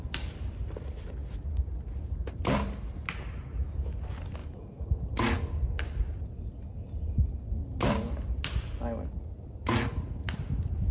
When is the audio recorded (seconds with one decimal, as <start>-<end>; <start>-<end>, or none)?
0.0-10.9